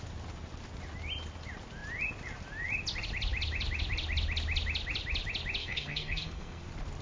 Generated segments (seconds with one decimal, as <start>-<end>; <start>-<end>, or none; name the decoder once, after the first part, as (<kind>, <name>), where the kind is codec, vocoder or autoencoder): 5.6-6.6 (codec, SNAC)